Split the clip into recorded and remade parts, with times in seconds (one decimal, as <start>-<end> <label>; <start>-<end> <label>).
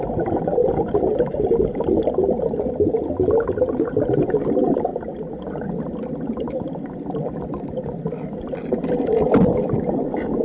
0.0-10.4 recorded